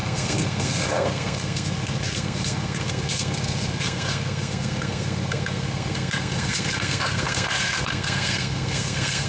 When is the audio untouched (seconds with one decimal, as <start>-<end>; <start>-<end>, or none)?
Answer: none